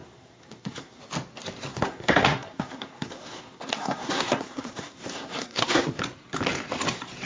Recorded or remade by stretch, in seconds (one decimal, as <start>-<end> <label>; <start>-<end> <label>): 0.0-1.0 remade; 1.0-1.7 recorded; 1.7-6.0 remade; 6.0-7.3 recorded